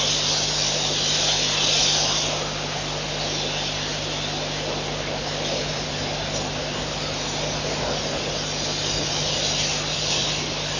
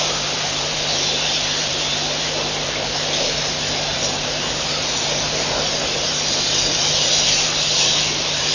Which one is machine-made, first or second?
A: second